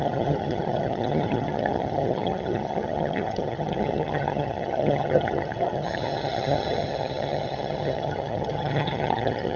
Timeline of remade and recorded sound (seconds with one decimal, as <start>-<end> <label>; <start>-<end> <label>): 0.0-9.6 remade